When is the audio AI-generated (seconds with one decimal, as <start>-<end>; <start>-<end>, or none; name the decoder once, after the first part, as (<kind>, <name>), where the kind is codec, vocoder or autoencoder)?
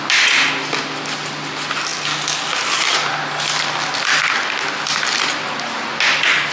none